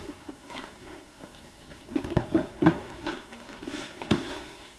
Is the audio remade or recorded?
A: remade